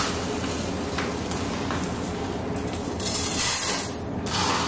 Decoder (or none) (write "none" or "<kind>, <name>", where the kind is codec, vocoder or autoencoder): none